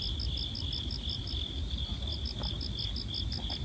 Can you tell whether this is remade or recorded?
recorded